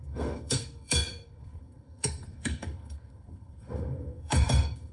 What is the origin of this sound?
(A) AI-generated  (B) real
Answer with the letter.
A